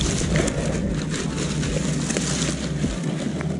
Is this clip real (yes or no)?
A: yes